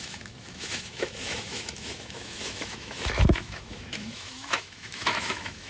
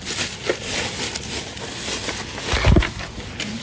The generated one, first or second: first